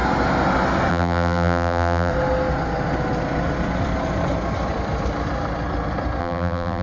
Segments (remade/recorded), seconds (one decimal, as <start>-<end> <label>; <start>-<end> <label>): 0.0-0.9 recorded; 0.9-2.1 remade; 2.1-6.2 recorded; 6.2-6.8 remade